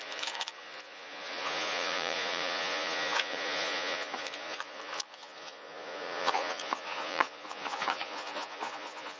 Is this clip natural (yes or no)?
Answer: no